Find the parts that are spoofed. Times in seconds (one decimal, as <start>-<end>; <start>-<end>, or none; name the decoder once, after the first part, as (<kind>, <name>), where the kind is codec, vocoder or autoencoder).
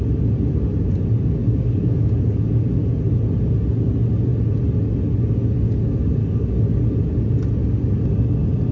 1.4-2.5 (codec, DAC); 6.2-6.8